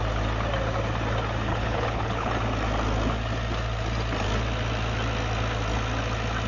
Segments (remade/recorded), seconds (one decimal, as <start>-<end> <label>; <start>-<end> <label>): 0.0-1.5 recorded; 1.5-2.3 remade; 2.3-6.5 recorded